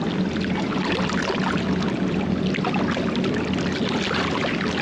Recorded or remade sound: recorded